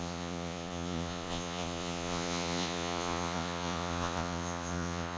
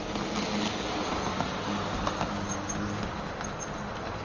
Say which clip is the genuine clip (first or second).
second